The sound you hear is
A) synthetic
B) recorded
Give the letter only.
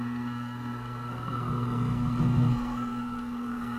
A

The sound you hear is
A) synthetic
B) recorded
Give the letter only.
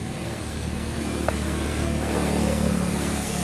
A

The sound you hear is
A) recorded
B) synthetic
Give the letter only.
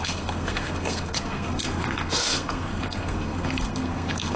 B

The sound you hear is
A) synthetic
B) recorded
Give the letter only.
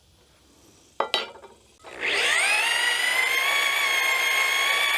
B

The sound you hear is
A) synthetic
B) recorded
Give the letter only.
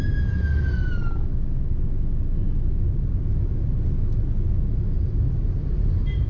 B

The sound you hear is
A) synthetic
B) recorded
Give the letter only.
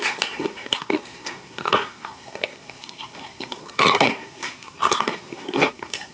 A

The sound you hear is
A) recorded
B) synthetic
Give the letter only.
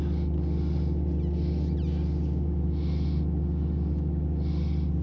A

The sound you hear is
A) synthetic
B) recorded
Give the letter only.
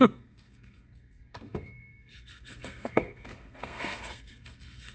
A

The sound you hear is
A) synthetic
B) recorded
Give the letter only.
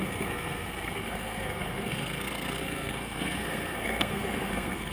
A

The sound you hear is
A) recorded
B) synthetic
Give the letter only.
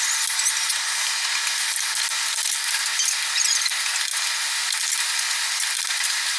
A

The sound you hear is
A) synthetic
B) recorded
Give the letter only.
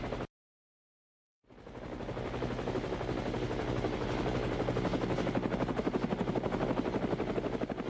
B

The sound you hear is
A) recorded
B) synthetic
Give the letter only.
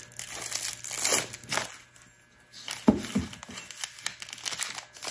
A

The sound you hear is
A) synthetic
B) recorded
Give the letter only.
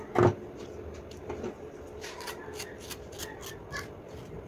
B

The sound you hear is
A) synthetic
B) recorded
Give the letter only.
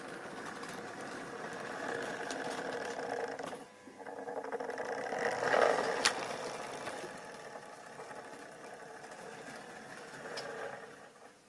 B